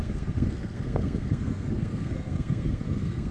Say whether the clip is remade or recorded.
remade